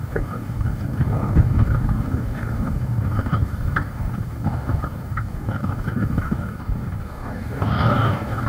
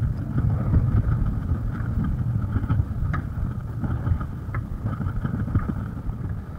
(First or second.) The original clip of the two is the second